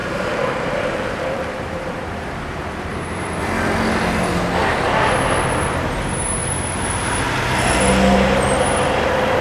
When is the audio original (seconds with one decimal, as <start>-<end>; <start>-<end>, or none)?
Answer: 3.4-9.4